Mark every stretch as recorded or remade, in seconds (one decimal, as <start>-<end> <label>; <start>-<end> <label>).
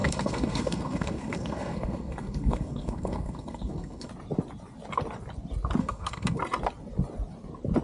0.0-4.1 remade; 4.1-5.8 recorded; 5.8-6.4 remade; 6.4-7.8 recorded